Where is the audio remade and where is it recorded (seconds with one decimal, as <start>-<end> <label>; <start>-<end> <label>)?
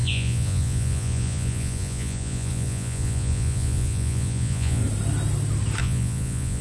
0.0-4.8 remade; 4.8-5.8 recorded; 5.8-6.6 remade